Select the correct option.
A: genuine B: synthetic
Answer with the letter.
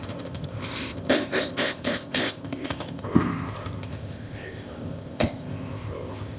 B